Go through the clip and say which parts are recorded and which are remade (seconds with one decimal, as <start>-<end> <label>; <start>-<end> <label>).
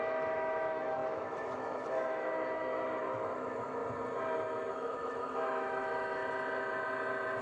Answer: 0.0-3.8 remade; 3.8-4.7 recorded; 4.7-6.2 remade; 6.2-7.4 recorded